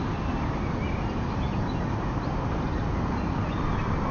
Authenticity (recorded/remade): recorded